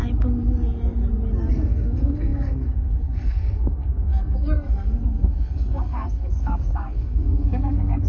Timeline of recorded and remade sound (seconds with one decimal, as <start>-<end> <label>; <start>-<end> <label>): 0.0-1.5 recorded; 1.5-8.1 remade